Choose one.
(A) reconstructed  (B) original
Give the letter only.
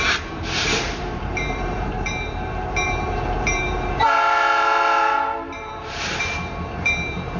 A